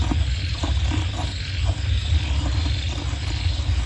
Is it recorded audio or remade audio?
recorded